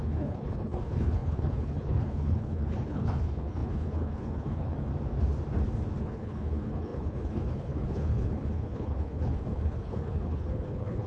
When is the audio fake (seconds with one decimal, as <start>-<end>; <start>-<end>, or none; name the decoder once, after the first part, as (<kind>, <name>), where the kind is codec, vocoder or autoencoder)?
0.0-4.9 (codec, HILCodec); 6.0-11.1